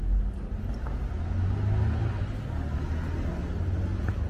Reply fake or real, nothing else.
real